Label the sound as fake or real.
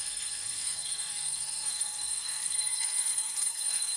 fake